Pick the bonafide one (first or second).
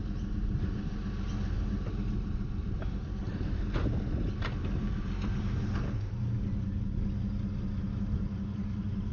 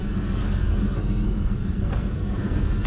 first